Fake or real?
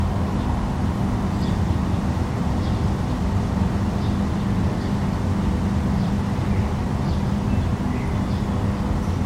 real